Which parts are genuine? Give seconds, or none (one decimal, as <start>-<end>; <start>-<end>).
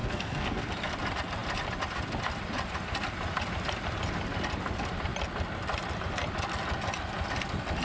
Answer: 0.7-7.8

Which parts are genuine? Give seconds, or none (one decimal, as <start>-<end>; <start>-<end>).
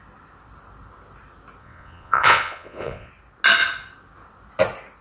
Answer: 0.0-1.6; 3.1-5.0